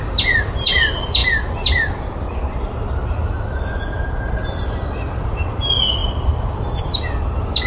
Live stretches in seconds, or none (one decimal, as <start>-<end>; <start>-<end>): 0.0-7.7